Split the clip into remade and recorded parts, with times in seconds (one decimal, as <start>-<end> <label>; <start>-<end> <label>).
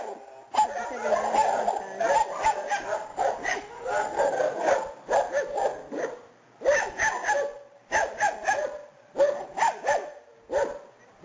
0.0-3.1 recorded; 3.1-4.3 remade; 4.3-11.2 recorded